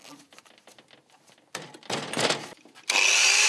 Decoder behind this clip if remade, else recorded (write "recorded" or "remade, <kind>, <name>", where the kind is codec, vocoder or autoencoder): recorded